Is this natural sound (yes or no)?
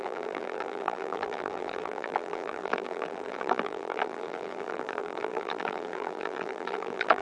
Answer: no